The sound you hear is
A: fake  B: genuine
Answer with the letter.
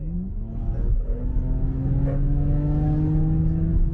B